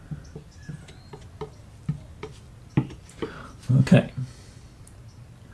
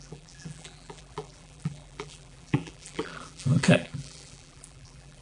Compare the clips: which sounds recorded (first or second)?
first